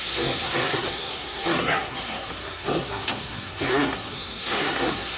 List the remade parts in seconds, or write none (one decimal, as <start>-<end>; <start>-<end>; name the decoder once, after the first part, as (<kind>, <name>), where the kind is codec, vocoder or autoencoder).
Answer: 0.0-5.2 (codec, SNAC)